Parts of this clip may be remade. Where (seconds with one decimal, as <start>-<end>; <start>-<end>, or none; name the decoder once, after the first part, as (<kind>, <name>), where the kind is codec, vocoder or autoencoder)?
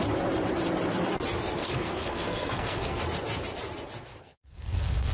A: 1.6-3.0 (codec, SNAC); 4.1-5.1